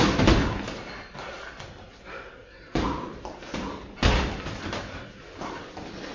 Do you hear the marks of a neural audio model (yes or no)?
no